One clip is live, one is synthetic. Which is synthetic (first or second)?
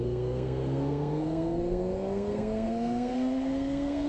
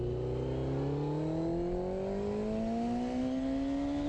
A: first